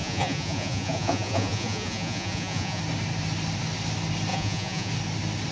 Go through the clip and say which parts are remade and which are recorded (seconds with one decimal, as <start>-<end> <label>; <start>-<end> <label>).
0.0-2.8 remade; 2.8-4.3 recorded; 4.3-4.9 remade; 4.9-5.5 recorded